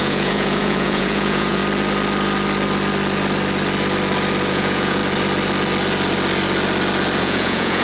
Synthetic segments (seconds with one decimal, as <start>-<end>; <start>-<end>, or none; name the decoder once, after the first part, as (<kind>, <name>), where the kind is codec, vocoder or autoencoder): 0.0-1.6 (vocoder, Vocos); 4.5-5.0; 7.2-7.8